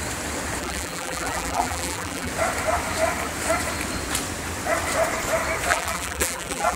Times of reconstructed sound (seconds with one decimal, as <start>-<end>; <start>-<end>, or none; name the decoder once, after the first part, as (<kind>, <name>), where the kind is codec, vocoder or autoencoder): 0.6-2.3 (vocoder, BigVGAN v2); 5.7-6.8